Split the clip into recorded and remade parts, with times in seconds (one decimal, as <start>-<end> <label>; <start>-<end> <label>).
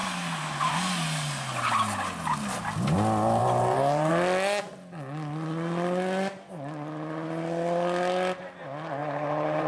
0.0-0.7 remade; 0.7-3.4 recorded; 3.4-4.1 remade; 4.1-9.0 recorded; 9.0-9.7 remade